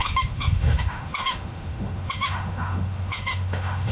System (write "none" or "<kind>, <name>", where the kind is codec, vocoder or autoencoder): autoencoder, DAC-VAE